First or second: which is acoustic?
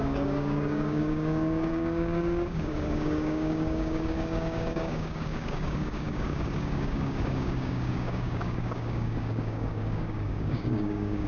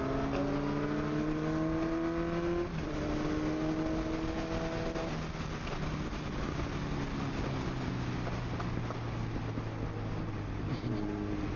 second